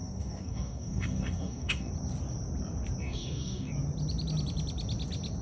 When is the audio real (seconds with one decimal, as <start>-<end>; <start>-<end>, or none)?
1.9-3.0; 3.7-5.4